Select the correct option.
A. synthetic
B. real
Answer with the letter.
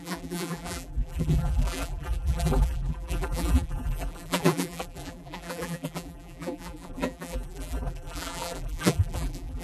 A